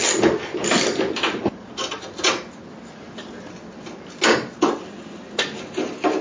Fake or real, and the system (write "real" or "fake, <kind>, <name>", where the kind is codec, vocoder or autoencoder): real